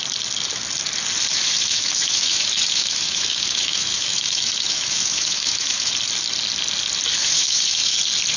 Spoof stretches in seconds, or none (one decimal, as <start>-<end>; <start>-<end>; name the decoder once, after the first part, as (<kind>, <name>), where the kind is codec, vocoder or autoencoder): 1.3-5.9 (autoencoder, DAC-VAE); 7.2-8.0